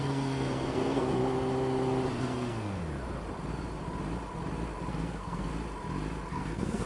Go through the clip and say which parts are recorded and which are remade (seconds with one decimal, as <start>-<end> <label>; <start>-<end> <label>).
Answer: 0.0-1.2 remade; 1.2-2.2 recorded; 2.2-2.8 remade; 2.8-4.9 recorded; 4.9-5.5 remade; 5.5-6.3 recorded; 6.3-6.9 remade